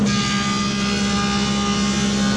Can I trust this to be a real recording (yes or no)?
yes